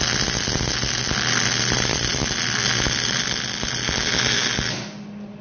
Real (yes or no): yes